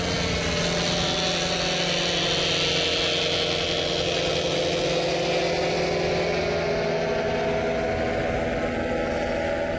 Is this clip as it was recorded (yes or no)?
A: yes